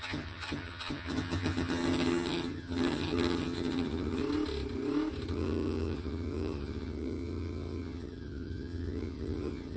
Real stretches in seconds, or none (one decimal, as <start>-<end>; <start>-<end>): 4.2-5.3